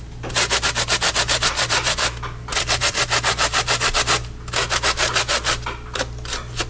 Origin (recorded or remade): recorded